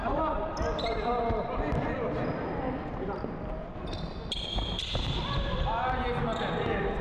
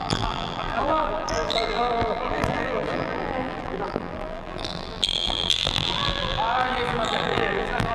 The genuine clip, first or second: first